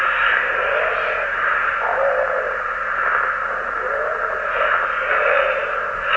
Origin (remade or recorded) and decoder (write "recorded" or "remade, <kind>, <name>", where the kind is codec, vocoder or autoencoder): recorded